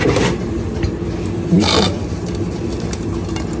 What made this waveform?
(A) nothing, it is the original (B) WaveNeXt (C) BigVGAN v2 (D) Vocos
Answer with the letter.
A